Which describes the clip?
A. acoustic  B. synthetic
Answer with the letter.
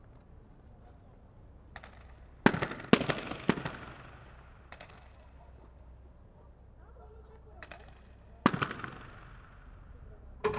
A